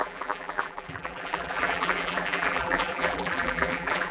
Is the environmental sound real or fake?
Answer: fake